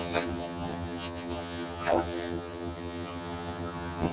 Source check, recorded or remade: remade